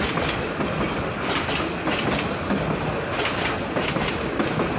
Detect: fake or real real